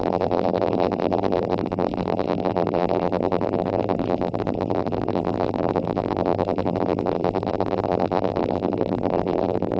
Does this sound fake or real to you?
fake